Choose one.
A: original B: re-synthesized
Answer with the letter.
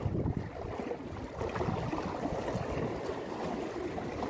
A